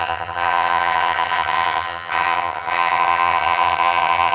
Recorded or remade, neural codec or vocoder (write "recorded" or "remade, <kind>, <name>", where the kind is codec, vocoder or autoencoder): remade, vocoder, HiFi-GAN